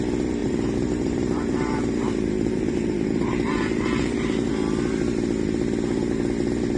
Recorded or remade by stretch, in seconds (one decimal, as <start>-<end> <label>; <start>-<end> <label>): 0.0-0.4 recorded; 0.4-4.5 remade; 4.5-6.8 recorded